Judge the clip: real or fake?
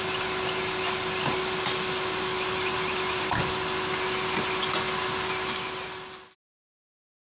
real